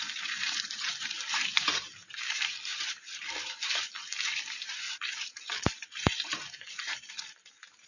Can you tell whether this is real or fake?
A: fake